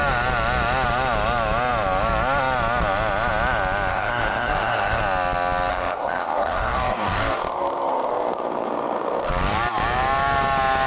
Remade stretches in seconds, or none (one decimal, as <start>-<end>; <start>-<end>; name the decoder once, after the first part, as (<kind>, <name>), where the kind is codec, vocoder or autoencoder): 3.9-5.0 (codec, SNAC); 5.7-9.3